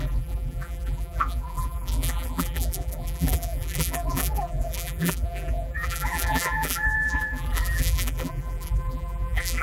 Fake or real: fake